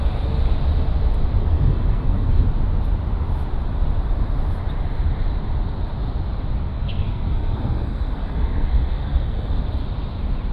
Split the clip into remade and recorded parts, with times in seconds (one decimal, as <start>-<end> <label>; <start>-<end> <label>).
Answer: 0.0-1.4 recorded; 1.4-2.4 remade; 2.4-6.7 recorded; 6.7-9.5 remade; 9.5-10.5 recorded